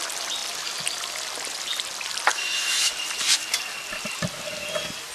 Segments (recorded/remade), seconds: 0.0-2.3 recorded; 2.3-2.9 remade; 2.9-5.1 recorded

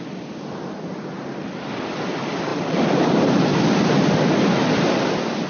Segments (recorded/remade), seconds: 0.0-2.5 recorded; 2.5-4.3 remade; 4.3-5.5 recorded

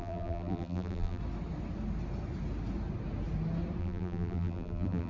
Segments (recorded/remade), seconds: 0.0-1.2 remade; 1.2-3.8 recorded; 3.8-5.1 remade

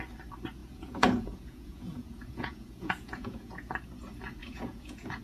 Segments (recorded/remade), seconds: 0.0-0.6 recorded; 0.6-3.7 remade; 3.7-4.4 recorded; 4.4-5.2 remade